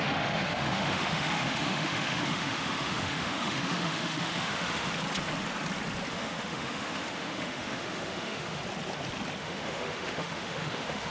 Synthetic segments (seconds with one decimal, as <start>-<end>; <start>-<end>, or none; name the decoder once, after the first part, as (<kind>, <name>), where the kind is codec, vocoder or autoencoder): 0.0-4.9 (autoencoder, DAC-VAE); 6.1-8.6; 9.4-11.1

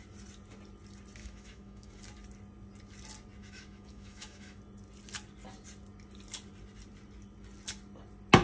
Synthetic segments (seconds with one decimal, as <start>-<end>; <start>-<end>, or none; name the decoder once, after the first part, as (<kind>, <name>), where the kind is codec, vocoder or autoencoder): 1.2-2.0 (autoencoder, DAC-VAE); 3.4-4.6

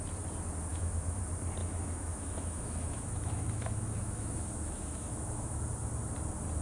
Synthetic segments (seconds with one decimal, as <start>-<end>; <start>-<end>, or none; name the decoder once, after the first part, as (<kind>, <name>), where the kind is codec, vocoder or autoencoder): 0.7-1.2 (autoencoder, DAC-VAE); 1.6-5.6

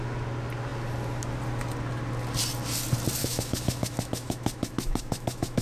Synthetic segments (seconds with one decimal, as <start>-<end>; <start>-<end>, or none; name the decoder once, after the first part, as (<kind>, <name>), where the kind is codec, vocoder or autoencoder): 3.2-5.6 (autoencoder, DAC-VAE)

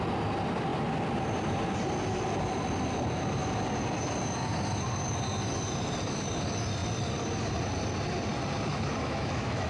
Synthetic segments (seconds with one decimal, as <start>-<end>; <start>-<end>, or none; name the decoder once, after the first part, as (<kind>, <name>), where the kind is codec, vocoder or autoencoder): 8.7-9.7 (autoencoder, DAC-VAE)